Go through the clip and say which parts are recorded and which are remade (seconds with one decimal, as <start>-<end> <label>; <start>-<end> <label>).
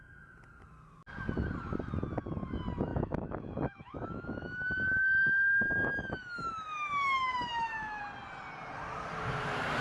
0.0-2.9 recorded; 2.9-8.0 remade; 8.0-9.8 recorded